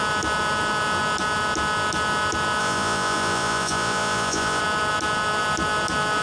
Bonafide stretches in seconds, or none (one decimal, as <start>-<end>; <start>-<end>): 0.0-2.6; 4.6-6.2